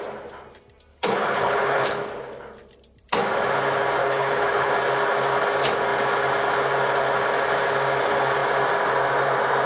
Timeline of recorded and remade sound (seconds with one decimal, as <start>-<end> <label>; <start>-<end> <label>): 0.0-0.9 recorded; 0.9-2.1 remade; 2.1-4.0 recorded; 4.0-4.7 remade; 4.7-9.7 recorded